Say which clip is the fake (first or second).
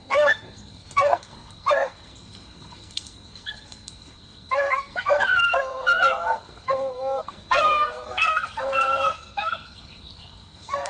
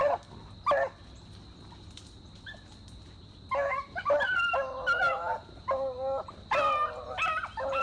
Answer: first